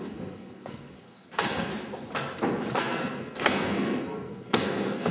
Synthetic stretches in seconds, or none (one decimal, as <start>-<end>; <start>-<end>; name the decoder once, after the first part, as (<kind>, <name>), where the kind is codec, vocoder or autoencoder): 0.0-1.7 (codec, SNAC); 2.8-5.1